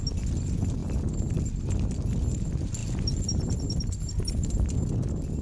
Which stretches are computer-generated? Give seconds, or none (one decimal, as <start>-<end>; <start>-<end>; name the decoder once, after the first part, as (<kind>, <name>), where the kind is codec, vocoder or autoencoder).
none